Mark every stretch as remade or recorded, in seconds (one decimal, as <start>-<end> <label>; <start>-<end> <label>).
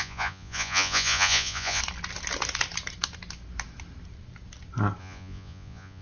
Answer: 0.0-1.8 remade; 1.8-5.0 recorded; 5.0-6.0 remade